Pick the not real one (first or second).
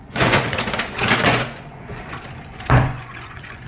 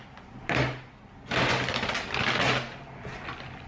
first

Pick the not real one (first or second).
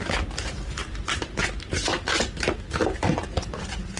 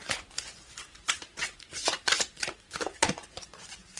second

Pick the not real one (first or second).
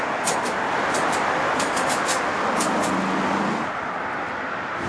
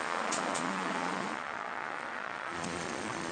second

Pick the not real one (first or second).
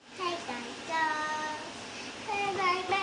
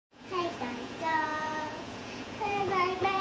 second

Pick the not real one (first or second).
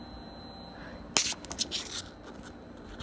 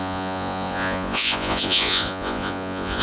second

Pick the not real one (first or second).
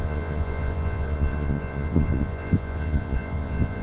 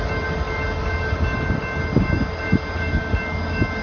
first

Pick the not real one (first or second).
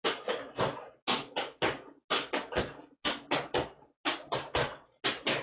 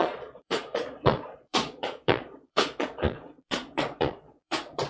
second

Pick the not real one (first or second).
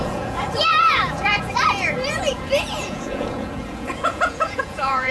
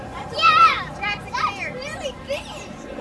first